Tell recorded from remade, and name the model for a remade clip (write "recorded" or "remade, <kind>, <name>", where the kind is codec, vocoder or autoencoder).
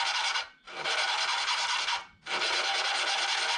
recorded